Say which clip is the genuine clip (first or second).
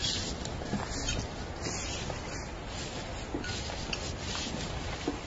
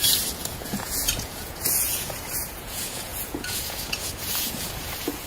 first